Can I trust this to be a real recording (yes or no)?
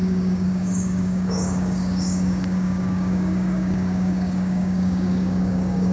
no